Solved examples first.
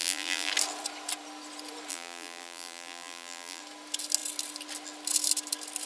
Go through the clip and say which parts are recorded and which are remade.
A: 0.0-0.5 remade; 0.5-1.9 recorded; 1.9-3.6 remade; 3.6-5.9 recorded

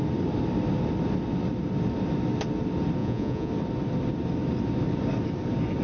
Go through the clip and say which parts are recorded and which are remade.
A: 0.0-3.0 recorded; 3.0-3.5 remade; 3.5-5.8 recorded

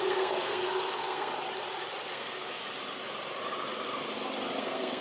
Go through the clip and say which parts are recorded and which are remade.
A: 0.0-1.3 remade; 1.3-2.1 recorded; 2.1-2.6 remade; 2.6-4.6 recorded; 4.6-5.0 remade

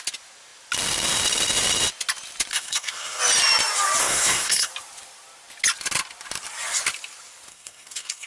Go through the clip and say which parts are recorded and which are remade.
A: 0.0-2.5 recorded; 2.5-3.2 remade; 3.2-4.0 recorded; 4.0-4.7 remade; 4.7-7.5 recorded; 7.5-8.3 remade

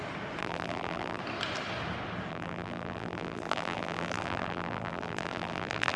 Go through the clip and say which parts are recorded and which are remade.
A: 0.0-0.4 recorded; 0.4-1.2 remade; 1.2-2.3 recorded; 2.3-6.0 remade

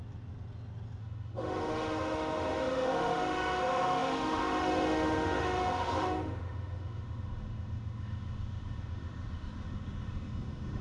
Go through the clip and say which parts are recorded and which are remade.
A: 0.0-1.0 recorded; 1.0-10.8 remade

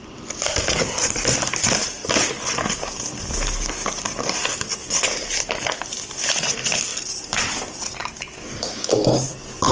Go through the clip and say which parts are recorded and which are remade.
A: 0.0-8.0 recorded; 8.0-9.1 remade; 9.1-9.7 recorded

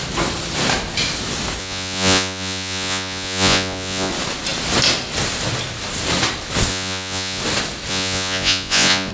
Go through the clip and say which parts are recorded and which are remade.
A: 0.0-1.6 recorded; 1.6-4.1 remade; 4.1-6.7 recorded; 6.7-7.4 remade; 7.4-7.9 recorded; 7.9-9.1 remade